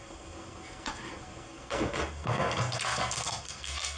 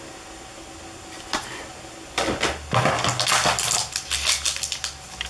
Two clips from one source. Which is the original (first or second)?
second